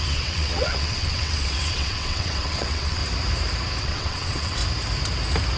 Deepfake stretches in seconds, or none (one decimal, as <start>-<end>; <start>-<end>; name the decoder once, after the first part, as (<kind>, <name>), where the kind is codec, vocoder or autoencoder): 0.0-3.0 (vocoder, WaveNeXt); 3.8-4.6